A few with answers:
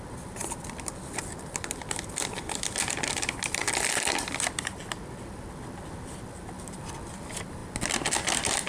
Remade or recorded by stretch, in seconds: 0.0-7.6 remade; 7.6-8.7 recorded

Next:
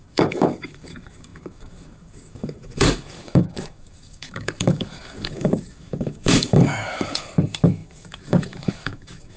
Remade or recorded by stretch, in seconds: 0.0-9.4 remade

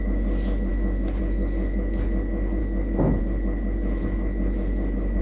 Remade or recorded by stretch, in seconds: 0.0-0.7 recorded; 0.7-1.2 remade; 1.2-2.6 recorded; 2.6-3.2 remade; 3.2-5.2 recorded

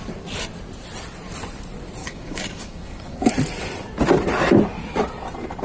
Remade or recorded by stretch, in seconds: 0.0-2.0 recorded; 2.0-3.3 remade; 3.3-5.6 recorded

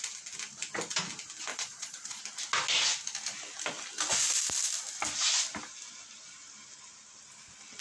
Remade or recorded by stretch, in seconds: 0.0-1.5 recorded; 1.5-2.2 remade; 2.2-7.8 recorded

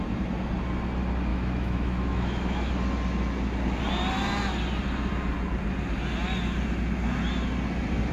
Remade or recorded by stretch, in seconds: 0.0-1.3 recorded; 1.3-2.7 remade; 2.7-8.1 recorded

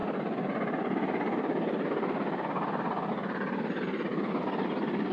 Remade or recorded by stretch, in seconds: 0.0-5.1 recorded

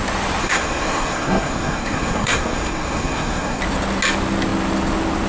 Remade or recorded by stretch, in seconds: 0.0-0.4 recorded; 0.4-3.6 remade; 3.6-5.3 recorded